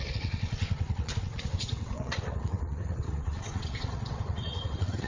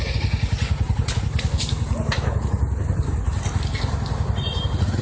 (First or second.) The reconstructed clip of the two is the first